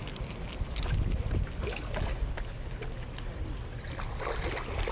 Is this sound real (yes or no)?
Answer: yes